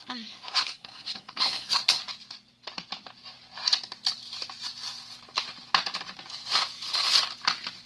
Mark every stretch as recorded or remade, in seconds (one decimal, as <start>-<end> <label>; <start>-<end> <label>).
0.0-2.0 remade; 2.0-7.9 recorded